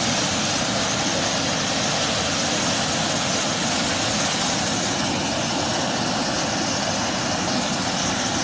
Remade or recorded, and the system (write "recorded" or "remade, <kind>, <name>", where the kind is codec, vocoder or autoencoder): recorded